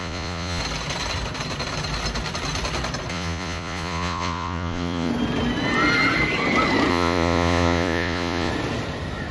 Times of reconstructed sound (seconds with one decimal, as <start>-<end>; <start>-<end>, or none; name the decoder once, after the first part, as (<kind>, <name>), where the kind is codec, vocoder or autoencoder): 0.0-0.6 (vocoder, Vocos); 3.1-5.1; 6.9-8.5

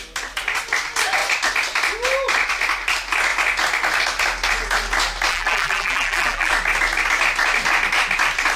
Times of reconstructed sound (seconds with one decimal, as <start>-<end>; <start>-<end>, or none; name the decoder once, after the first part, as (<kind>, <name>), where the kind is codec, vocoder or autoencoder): 5.3-6.5 (vocoder, BigVGAN v2)